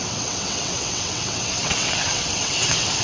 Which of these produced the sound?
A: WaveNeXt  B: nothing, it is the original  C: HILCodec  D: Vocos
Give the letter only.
A